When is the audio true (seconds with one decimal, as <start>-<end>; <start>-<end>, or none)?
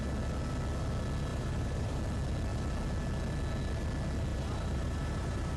0.0-1.3; 2.0-4.3